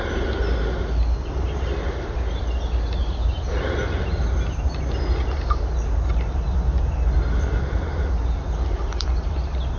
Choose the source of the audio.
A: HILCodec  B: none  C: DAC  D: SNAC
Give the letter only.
B